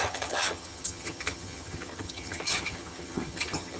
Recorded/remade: remade